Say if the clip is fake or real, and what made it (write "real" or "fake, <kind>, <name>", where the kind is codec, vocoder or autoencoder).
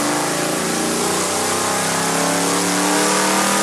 real